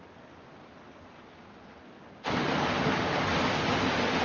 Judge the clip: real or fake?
real